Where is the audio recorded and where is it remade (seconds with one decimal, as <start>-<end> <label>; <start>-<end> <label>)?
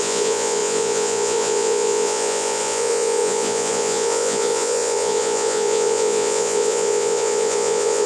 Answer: 0.0-8.1 remade